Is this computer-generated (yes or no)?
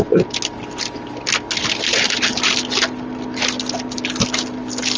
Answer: no